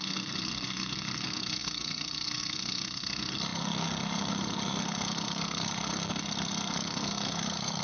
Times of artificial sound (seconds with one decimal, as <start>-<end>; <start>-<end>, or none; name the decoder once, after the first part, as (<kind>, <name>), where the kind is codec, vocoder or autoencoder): 0.0-7.8 (codec, SNAC)